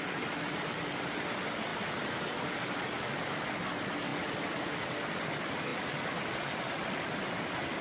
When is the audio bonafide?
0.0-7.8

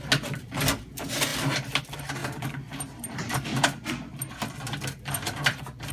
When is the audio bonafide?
0.0-2.2